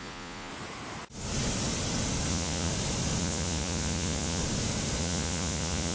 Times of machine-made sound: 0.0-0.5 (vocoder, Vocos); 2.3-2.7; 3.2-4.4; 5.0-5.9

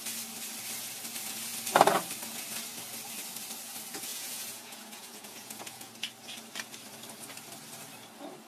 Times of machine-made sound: 4.1-5.9 (vocoder, Vocos)